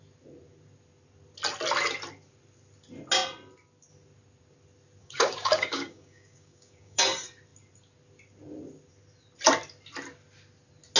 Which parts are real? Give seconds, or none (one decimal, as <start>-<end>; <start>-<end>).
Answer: 0.0-5.0; 7.0-11.0